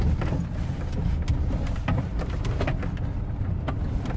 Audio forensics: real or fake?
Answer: real